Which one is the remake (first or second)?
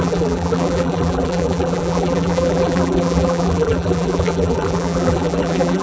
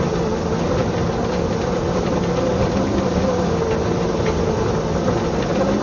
first